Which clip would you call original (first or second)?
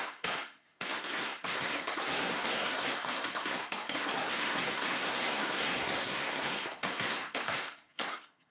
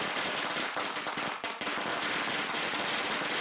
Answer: second